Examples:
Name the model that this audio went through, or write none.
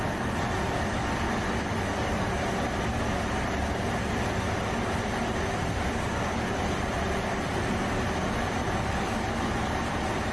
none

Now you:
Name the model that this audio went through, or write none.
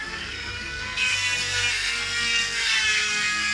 codec, SNAC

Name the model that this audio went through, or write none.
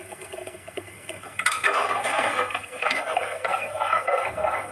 codec, SNAC